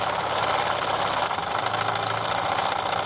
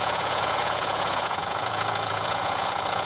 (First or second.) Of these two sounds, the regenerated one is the second